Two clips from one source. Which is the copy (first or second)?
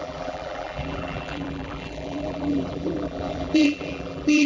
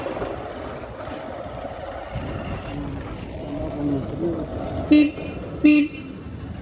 first